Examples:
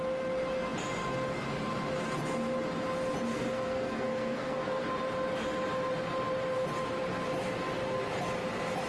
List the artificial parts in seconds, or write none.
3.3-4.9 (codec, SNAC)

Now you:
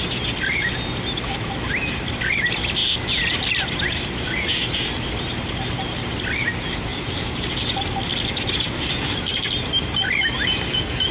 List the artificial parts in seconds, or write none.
6.9-7.5 (vocoder, BigVGAN v2)

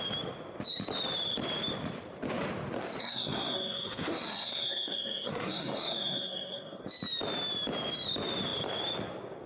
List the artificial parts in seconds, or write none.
3.0-6.8 (codec, SNAC)

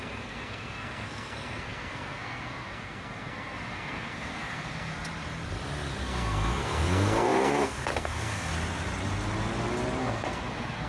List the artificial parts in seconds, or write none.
0.0-4.9 (codec, SNAC); 6.0-8.5; 10.0-10.9

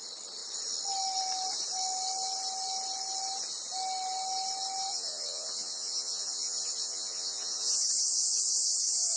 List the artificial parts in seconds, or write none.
4.9-9.2 (vocoder, Vocos)

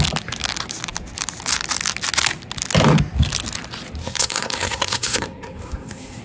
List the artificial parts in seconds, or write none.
4.0-6.2 (codec, SNAC)

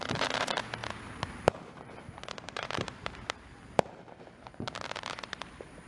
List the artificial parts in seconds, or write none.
0.0-5.9 (vocoder, BigVGAN v2)

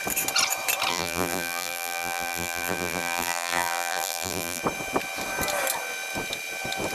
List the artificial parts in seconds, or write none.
0.9-4.6 (vocoder, BigVGAN v2)